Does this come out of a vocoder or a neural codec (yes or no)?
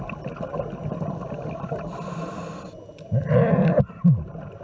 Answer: no